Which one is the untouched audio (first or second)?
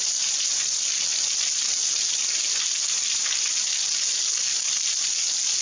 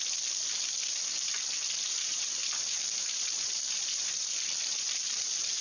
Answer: first